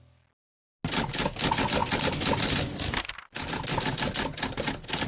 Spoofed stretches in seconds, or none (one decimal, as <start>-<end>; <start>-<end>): none